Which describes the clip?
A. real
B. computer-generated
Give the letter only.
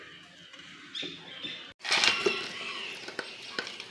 A